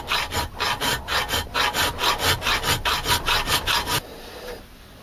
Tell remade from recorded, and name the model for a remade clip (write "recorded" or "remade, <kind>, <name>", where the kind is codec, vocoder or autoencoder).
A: recorded